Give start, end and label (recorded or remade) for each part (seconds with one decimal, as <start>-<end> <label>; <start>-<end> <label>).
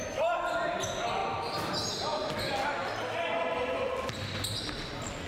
0.0-5.3 recorded